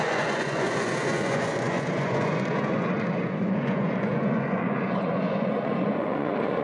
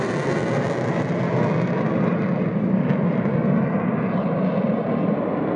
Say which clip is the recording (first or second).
second